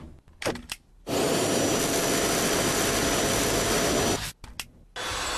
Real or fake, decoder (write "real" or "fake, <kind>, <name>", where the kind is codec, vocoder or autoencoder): real